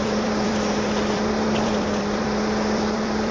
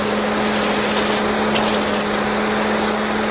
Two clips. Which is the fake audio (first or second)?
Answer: first